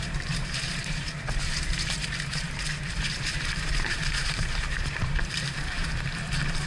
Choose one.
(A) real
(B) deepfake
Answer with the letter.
B